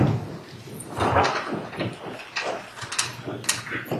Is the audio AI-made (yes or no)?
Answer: no